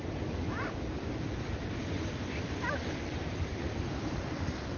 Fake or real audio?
fake